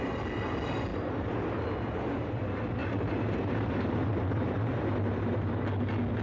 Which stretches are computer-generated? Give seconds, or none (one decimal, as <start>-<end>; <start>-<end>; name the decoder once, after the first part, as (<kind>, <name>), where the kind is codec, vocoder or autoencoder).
0.9-2.4 (vocoder, BigVGAN v2); 2.8-5.6